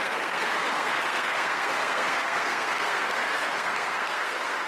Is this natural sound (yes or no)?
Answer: no